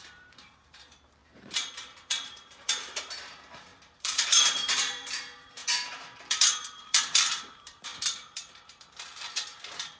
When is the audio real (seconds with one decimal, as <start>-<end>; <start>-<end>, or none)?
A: none